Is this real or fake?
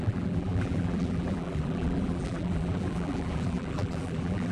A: fake